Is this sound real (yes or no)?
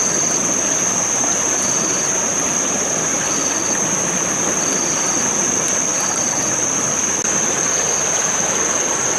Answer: yes